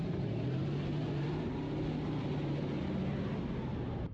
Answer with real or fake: real